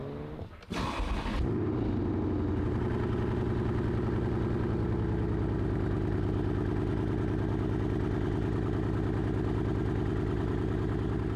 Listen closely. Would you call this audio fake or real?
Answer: real